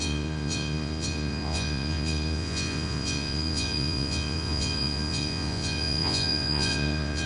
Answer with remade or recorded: remade